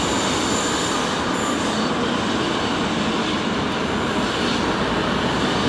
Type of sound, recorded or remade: recorded